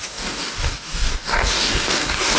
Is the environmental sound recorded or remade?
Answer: remade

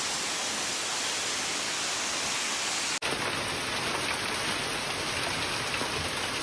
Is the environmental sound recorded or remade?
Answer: recorded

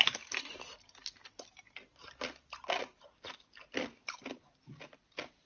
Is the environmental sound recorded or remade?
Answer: recorded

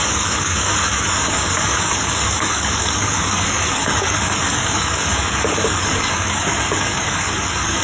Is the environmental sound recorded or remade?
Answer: remade